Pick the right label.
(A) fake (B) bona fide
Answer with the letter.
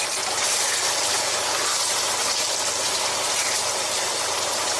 B